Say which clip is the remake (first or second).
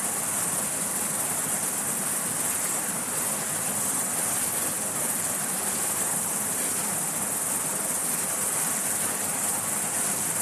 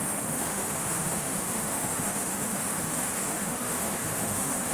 second